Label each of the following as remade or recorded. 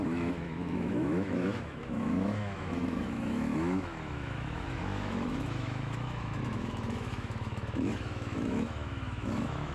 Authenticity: remade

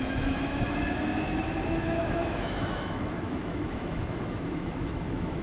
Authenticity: remade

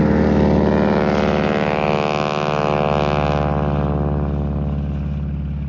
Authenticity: recorded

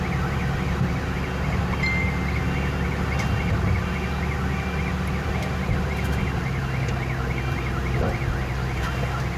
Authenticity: recorded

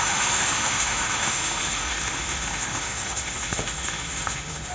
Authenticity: remade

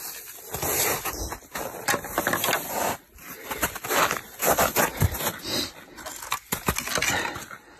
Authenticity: recorded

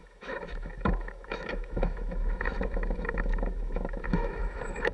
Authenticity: remade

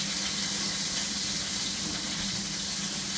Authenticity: recorded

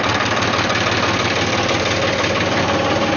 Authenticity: recorded